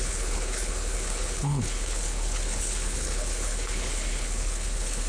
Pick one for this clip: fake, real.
fake